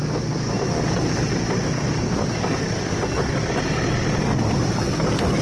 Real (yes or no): yes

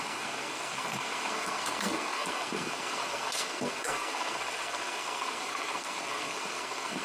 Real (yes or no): no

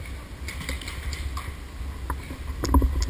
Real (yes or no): yes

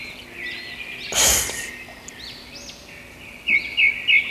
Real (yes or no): yes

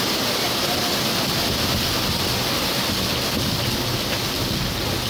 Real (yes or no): yes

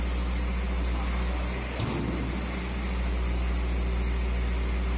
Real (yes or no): yes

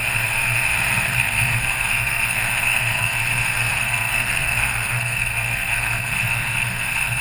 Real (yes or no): no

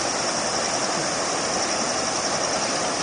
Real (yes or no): yes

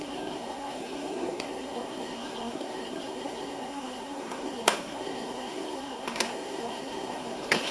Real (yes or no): no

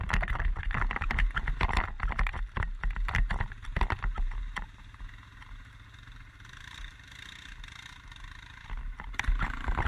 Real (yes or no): yes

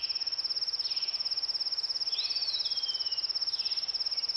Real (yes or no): yes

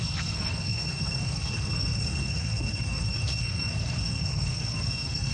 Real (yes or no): no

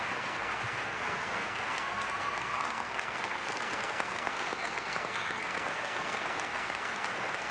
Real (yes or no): no